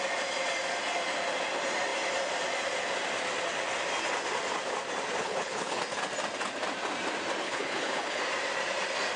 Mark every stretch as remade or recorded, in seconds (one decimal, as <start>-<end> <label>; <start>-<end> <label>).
0.0-5.2 recorded; 5.2-5.8 remade; 5.8-7.4 recorded; 7.4-8.2 remade; 8.2-9.2 recorded